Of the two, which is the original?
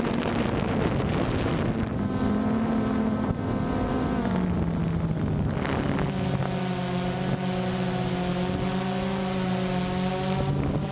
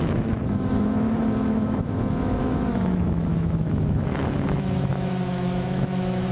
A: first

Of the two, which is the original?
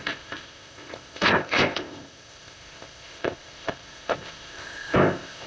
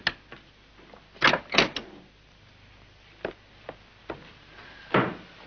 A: second